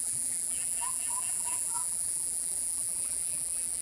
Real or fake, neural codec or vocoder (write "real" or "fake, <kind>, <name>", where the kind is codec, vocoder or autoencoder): fake, vocoder, BigVGAN v2